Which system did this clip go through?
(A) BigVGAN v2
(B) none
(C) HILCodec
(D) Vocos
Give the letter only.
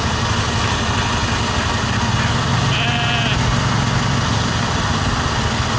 B